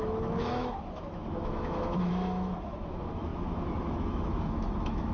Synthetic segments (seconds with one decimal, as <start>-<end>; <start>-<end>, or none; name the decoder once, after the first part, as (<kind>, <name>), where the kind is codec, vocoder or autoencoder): 0.0-5.1 (autoencoder, DAC-VAE)